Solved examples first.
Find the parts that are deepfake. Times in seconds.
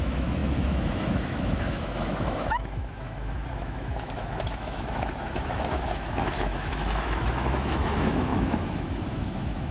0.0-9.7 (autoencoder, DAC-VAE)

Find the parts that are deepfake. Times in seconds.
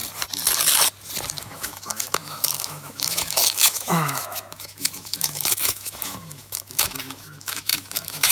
1.4-8.3 (autoencoder, DAC-VAE)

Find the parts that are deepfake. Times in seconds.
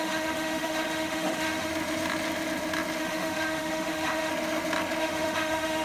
0.0-1.7 (autoencoder, DAC-VAE); 3.0-4.3; 5.0-5.8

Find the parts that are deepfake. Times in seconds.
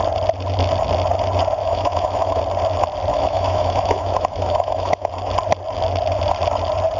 1.6-2.4 (autoencoder, DAC-VAE); 3.1-5.1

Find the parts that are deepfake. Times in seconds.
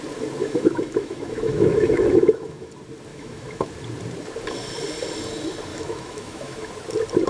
0.4-2.7 (autoencoder, DAC-VAE); 3.1-3.7; 5.7-6.7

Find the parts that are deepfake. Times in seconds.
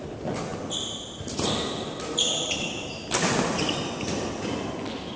none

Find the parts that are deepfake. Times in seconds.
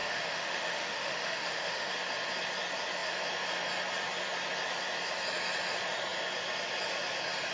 0.0-1.9 (autoencoder, DAC-VAE)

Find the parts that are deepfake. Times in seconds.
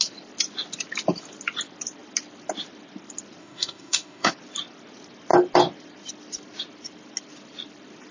3.4-4.3 (autoencoder, DAC-VAE)